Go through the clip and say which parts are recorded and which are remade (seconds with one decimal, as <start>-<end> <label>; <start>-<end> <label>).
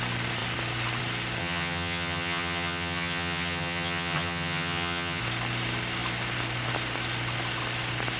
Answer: 0.0-1.4 recorded; 1.4-5.2 remade; 5.2-8.2 recorded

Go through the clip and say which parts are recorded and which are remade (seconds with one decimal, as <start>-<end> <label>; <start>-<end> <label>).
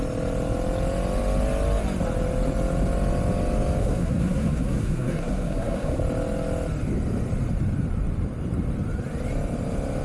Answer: 0.0-3.8 recorded; 3.8-6.0 remade; 6.0-10.0 recorded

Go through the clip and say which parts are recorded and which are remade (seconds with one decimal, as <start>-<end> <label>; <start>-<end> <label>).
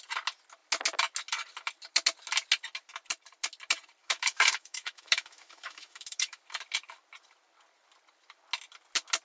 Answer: 0.0-4.0 recorded; 4.0-6.4 remade; 6.4-9.2 recorded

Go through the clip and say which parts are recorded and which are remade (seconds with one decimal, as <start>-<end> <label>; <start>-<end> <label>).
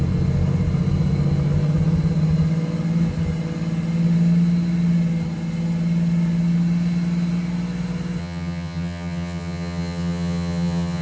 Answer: 0.0-8.2 recorded; 8.2-11.0 remade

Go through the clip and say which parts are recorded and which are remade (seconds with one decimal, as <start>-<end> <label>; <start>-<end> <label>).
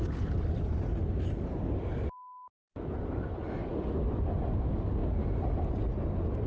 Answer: 0.0-6.5 recorded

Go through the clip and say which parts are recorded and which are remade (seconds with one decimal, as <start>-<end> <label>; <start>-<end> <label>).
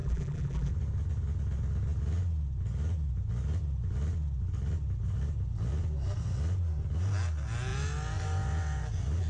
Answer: 0.0-0.7 remade; 0.7-9.3 recorded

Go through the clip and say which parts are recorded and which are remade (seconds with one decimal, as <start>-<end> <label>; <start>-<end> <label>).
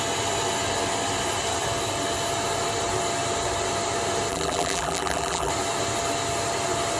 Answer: 0.0-4.3 recorded; 4.3-5.5 remade; 5.5-7.0 recorded